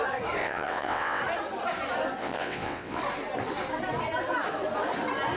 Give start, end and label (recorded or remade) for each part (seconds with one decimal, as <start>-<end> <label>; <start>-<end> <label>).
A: 0.0-0.4 recorded; 0.4-1.2 remade; 1.2-2.2 recorded; 2.2-3.0 remade; 3.0-5.4 recorded